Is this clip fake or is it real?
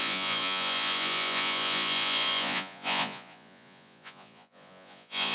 fake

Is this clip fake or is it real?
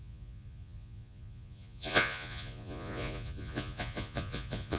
fake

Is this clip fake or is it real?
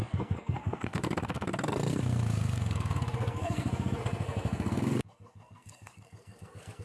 fake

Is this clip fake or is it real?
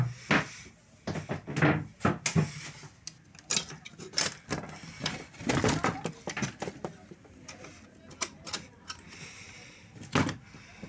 real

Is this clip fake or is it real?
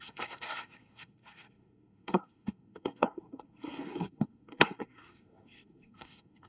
fake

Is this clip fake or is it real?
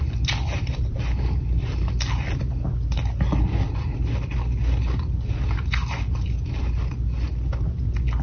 real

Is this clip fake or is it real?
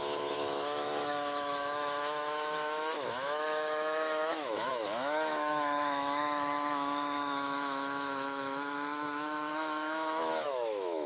fake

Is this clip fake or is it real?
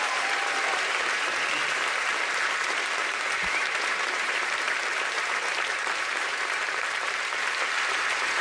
fake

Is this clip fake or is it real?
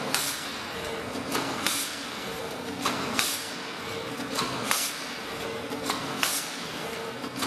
fake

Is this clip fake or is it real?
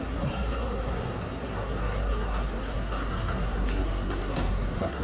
fake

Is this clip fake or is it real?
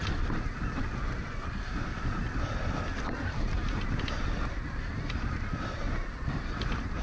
real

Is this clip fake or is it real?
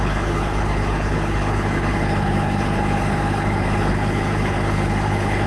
fake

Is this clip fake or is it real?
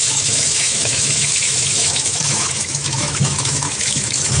fake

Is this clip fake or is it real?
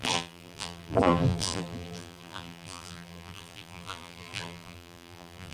fake